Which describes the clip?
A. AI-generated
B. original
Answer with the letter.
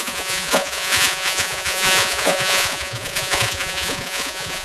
A